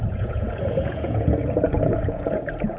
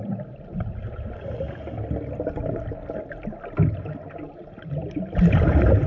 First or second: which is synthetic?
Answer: first